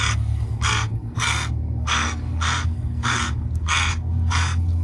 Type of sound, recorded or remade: remade